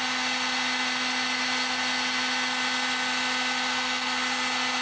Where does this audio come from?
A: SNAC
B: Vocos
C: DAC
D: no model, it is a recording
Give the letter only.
D